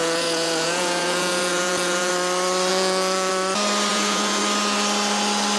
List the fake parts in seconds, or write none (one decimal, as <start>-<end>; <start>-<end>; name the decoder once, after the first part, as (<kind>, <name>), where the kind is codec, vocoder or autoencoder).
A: 0.0-2.1 (vocoder, Vocos); 2.7-3.3; 3.9-4.4